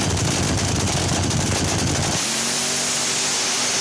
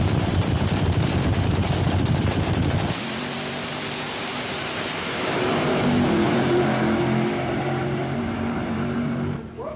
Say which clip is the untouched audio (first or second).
first